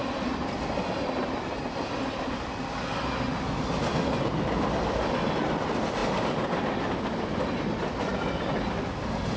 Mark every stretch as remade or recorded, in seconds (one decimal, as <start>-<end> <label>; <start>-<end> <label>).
0.0-6.0 recorded; 6.0-6.8 remade; 6.8-9.4 recorded